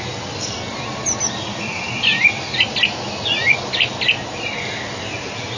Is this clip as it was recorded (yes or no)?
yes